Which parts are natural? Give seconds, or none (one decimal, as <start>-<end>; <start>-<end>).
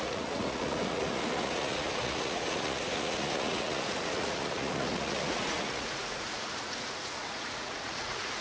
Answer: none